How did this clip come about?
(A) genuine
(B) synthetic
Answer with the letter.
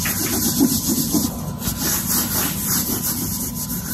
A